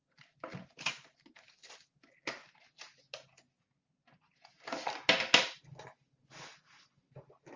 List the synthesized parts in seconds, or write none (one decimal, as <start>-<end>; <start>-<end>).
none